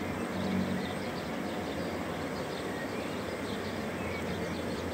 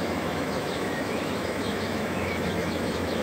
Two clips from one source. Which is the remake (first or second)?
second